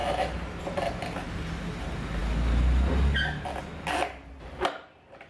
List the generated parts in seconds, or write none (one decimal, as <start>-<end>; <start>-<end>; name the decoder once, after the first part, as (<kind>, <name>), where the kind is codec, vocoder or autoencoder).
0.0-0.6 (vocoder, BigVGAN v2)